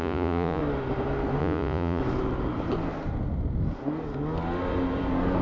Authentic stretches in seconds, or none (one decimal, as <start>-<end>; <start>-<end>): 0.6-1.4; 2.0-5.4